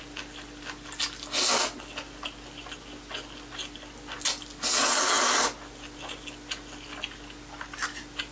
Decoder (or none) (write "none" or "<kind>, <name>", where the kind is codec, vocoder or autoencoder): none